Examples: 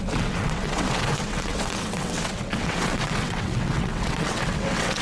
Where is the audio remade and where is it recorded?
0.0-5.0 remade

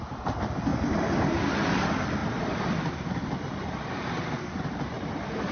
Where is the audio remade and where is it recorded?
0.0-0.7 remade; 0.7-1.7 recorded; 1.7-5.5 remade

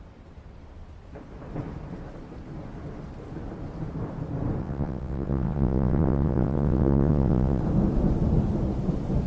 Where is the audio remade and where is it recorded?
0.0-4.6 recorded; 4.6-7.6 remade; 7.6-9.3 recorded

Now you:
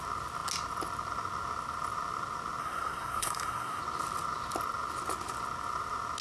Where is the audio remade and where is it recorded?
0.0-2.6 recorded; 2.6-3.8 remade; 3.8-6.2 recorded

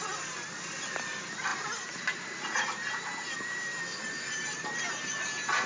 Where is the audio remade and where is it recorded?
0.0-1.5 recorded; 1.5-4.9 remade; 4.9-5.7 recorded

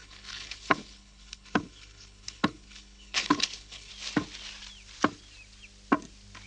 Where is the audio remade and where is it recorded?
0.0-3.9 remade; 3.9-6.5 recorded

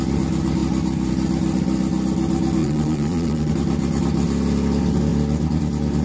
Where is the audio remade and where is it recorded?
0.0-2.6 recorded; 2.6-3.5 remade; 3.5-6.0 recorded